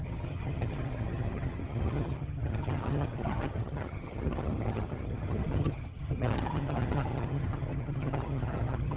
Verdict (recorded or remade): remade